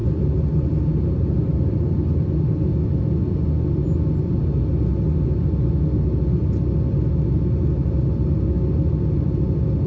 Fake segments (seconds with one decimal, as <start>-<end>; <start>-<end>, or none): 0.0-2.3